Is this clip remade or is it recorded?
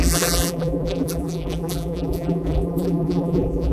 remade